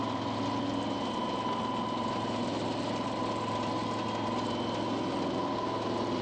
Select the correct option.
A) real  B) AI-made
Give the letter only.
A